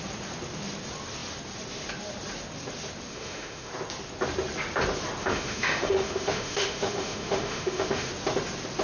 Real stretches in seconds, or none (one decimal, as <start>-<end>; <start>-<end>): 0.0-3.1; 3.7-5.2; 8.1-8.8